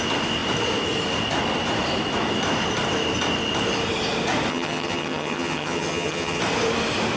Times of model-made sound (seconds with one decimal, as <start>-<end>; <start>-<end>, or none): 4.5-6.4